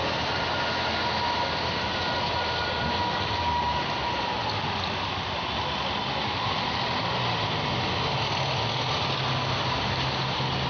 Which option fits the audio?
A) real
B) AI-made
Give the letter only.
A